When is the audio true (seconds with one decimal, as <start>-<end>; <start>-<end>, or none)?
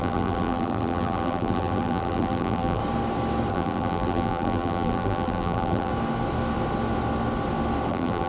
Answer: 2.8-3.5; 5.9-7.9